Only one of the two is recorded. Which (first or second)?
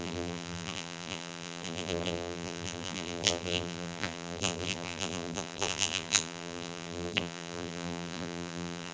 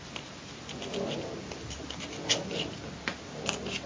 second